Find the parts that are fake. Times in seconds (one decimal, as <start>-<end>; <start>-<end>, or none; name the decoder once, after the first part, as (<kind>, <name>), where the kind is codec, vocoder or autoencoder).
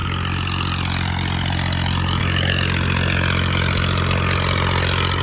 none